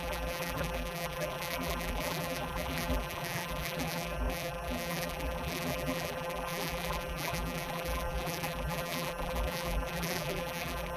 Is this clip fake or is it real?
fake